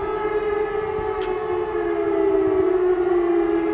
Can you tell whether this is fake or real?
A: real